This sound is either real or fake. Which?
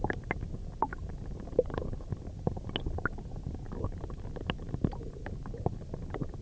real